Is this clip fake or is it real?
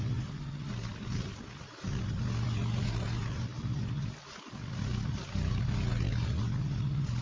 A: real